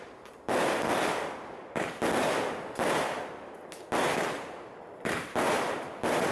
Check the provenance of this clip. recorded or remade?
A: recorded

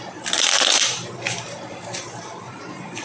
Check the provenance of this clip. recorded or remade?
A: recorded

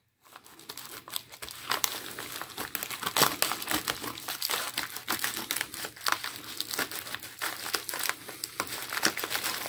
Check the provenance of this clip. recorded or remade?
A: recorded